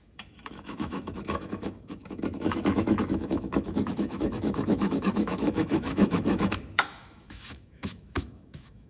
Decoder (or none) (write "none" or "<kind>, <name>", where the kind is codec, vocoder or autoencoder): autoencoder, DAC-VAE